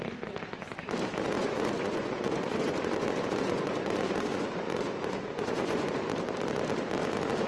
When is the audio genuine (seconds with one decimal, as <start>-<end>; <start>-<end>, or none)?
0.0-1.4; 5.9-7.5